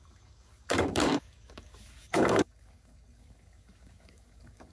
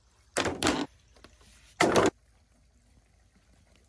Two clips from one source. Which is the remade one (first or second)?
first